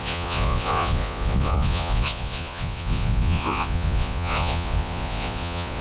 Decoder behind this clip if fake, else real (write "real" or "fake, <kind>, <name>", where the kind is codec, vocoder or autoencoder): fake, vocoder, Vocos